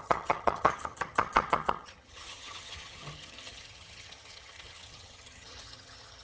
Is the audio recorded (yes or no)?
no